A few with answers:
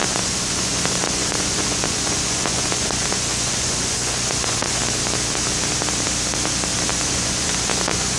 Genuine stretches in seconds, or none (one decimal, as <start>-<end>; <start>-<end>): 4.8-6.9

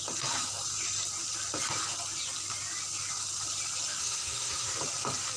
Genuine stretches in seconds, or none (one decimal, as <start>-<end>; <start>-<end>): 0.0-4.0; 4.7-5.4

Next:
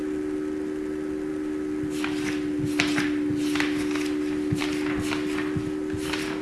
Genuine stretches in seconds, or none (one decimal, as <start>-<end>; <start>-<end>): 0.0-6.4

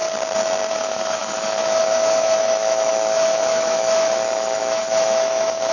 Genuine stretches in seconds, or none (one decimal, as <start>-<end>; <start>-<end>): 0.0-0.7

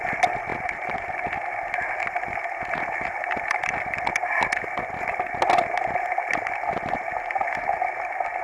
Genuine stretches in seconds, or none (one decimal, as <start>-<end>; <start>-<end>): 0.0-8.4

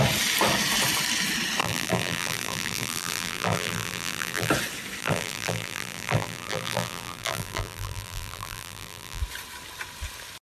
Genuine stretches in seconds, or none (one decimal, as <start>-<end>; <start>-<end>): 0.0-1.6; 4.5-5.0; 9.2-10.5

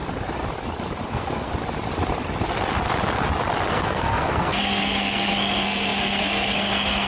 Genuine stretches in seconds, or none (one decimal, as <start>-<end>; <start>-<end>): 0.0-1.1; 1.5-3.7

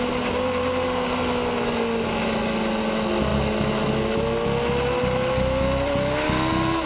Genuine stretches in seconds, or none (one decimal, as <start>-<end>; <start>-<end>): 0.0-6.9